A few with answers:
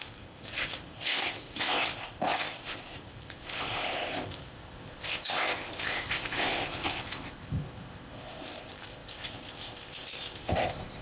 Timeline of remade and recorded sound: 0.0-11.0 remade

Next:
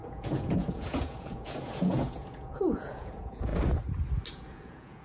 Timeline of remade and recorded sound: 0.0-3.5 remade; 3.5-4.3 recorded; 4.3-5.0 remade